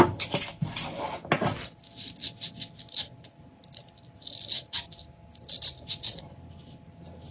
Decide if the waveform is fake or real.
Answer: real